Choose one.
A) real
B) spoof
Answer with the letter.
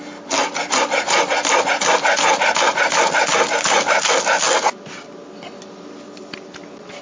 A